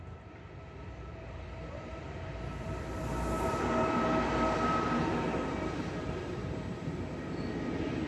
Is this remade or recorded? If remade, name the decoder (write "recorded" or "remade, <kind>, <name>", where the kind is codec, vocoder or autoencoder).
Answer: remade, vocoder, BigVGAN v2